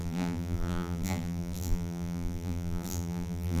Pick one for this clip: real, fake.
fake